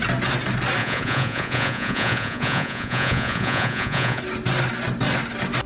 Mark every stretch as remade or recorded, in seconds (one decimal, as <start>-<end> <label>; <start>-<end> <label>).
0.0-0.8 recorded; 0.8-4.2 remade; 4.2-5.7 recorded